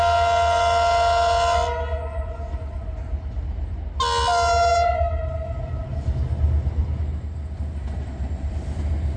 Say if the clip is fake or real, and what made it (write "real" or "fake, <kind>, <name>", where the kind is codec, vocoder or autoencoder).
real